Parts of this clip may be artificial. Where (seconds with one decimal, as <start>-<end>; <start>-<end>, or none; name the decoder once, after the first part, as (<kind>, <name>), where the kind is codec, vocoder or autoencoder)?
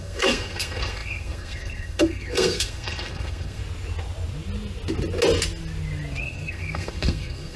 0.0-3.6 (codec, SNAC); 6.2-7.6